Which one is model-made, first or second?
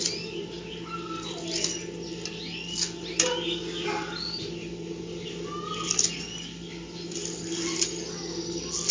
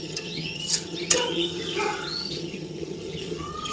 second